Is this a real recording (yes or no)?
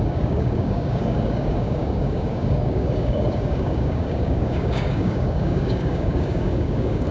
no